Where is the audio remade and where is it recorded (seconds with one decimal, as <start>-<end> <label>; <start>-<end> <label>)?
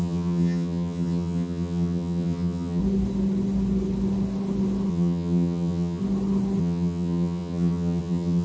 0.0-2.8 remade; 2.8-4.9 recorded; 4.9-6.0 remade; 6.0-6.6 recorded; 6.6-8.4 remade